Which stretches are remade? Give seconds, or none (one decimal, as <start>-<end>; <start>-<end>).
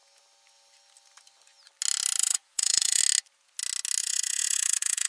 2.2-3.0; 4.0-5.1